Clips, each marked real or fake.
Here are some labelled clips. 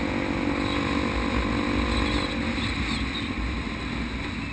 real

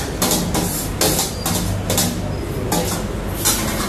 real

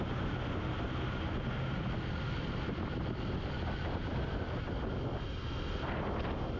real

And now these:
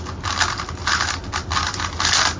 real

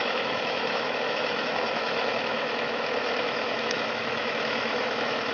fake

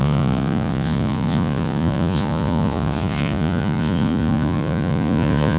fake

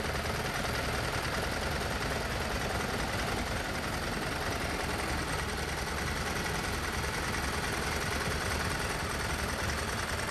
real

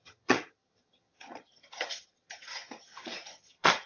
fake